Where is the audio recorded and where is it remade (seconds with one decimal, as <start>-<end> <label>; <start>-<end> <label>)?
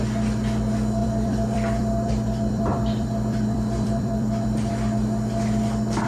0.0-1.0 recorded; 1.0-4.7 remade; 4.7-6.1 recorded